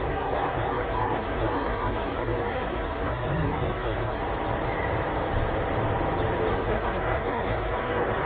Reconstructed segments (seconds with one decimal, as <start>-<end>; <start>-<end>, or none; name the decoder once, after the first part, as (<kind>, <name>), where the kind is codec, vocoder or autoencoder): 0.0-4.2 (codec, SNAC); 6.5-8.3